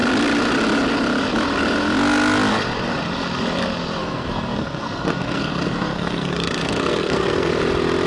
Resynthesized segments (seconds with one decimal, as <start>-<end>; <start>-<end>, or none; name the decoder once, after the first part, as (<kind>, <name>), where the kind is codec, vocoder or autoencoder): 4.0-7.5 (codec, SNAC)